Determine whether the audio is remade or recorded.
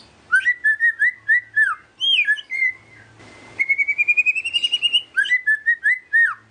recorded